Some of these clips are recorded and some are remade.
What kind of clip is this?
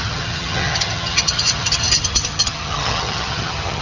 remade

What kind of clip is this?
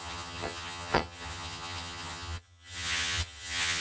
remade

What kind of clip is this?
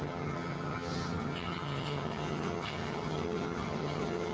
remade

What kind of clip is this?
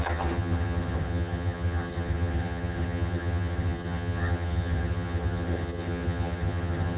remade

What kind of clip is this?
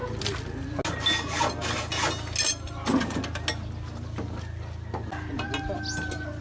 recorded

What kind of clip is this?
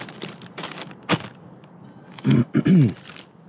recorded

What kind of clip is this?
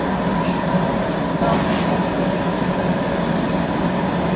recorded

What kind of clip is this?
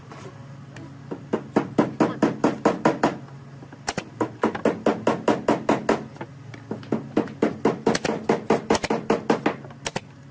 recorded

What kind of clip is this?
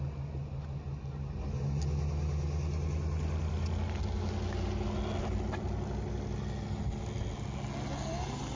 recorded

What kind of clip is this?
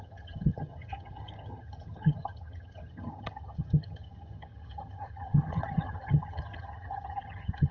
remade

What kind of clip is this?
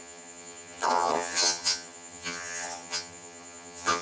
remade